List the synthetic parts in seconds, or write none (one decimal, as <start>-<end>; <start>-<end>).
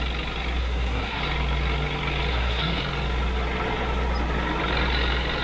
0.6-1.2; 2.3-2.8